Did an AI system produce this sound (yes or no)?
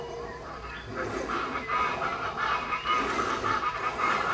no